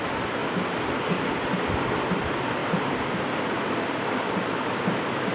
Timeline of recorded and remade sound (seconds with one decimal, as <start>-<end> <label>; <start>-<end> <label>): 0.0-5.3 recorded